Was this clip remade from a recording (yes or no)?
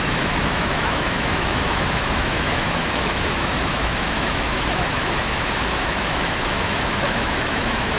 yes